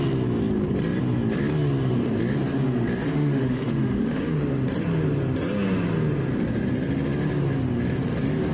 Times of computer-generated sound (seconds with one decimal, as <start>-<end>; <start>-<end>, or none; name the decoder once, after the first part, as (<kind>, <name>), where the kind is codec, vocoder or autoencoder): 3.1-4.4 (autoencoder, DAC-VAE)